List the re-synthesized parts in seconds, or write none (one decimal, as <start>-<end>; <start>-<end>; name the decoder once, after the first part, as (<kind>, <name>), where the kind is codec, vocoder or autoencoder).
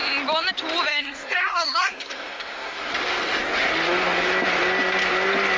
0.9-2.9 (codec, SNAC)